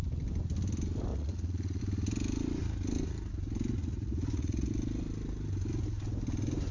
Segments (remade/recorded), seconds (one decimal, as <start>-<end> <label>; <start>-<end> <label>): 0.0-1.1 recorded; 1.1-1.8 remade; 1.8-3.8 recorded; 3.8-4.7 remade; 4.7-6.7 recorded